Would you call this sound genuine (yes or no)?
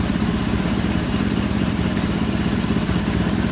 yes